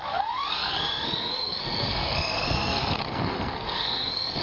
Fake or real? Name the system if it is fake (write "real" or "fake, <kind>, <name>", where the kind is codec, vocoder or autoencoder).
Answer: fake, codec, SNAC